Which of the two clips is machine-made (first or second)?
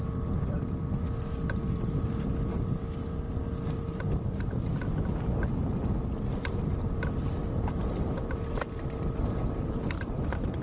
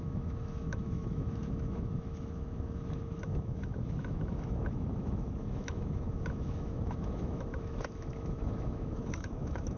second